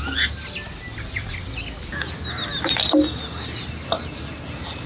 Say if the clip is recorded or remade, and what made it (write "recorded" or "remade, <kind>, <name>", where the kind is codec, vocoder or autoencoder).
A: recorded